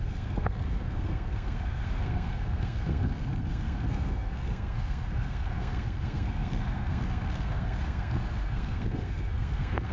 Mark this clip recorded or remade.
remade